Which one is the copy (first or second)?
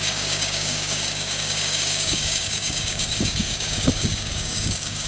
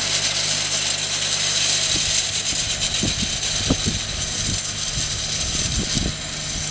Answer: first